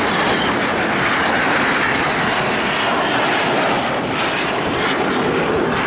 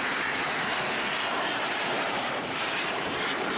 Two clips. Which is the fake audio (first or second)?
second